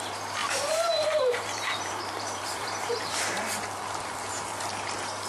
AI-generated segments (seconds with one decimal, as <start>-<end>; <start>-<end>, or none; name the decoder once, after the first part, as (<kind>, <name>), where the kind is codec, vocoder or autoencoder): 0.4-3.6 (vocoder, BigVGAN v2)